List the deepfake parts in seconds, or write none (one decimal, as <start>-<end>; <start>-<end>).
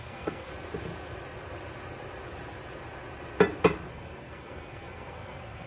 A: 0.0-0.5; 3.9-5.7